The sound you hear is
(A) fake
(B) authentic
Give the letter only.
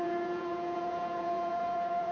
A